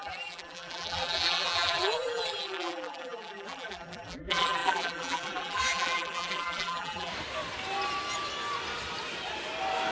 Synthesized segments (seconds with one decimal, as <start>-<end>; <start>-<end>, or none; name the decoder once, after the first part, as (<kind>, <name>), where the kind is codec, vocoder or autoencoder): 0.0-7.1 (vocoder, BigVGAN v2)